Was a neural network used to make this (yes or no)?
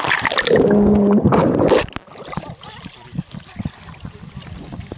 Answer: no